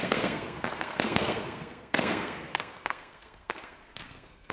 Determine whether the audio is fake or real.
fake